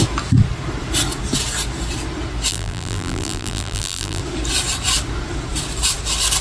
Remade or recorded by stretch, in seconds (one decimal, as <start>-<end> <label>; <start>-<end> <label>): 0.0-2.5 recorded; 2.5-4.2 remade; 4.2-6.4 recorded